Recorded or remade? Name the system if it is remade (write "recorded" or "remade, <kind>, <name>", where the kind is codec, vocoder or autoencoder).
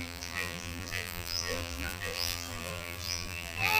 remade, vocoder, BigVGAN v2